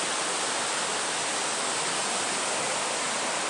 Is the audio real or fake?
real